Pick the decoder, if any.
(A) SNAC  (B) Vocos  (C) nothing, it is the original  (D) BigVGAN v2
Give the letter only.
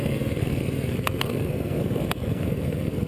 A